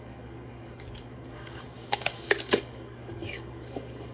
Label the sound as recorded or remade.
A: remade